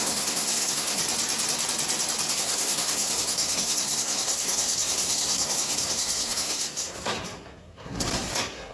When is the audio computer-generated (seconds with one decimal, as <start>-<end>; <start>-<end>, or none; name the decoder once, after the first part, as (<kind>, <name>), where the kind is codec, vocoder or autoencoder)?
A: 0.0-1.0 (codec, SNAC); 2.3-8.7